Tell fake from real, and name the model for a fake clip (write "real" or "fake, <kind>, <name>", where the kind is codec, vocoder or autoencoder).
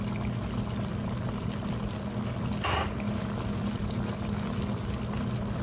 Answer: real